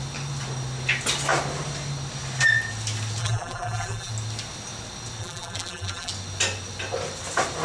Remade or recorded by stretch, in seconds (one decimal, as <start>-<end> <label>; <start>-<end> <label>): 0.0-3.2 recorded; 3.2-4.1 remade; 4.1-5.2 recorded; 5.2-6.1 remade; 6.1-7.6 recorded